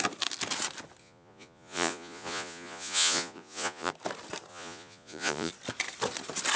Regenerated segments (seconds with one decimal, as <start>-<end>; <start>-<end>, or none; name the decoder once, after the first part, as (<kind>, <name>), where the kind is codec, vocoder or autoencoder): 1.0-3.9 (vocoder, Vocos); 4.5-5.5